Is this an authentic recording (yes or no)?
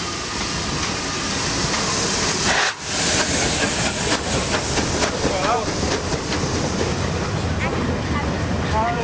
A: yes